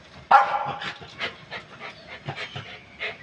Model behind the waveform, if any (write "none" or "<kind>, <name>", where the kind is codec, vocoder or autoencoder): none